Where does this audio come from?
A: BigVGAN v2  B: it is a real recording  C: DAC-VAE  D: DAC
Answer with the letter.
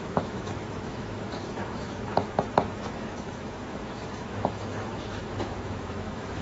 C